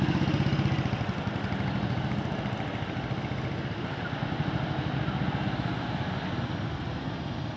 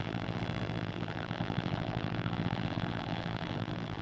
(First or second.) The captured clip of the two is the first